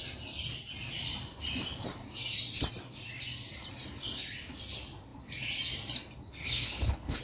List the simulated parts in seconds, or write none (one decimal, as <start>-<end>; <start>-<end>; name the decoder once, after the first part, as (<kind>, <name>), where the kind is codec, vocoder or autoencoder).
6.4-7.2 (codec, HILCodec)